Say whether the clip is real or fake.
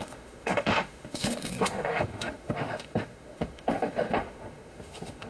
fake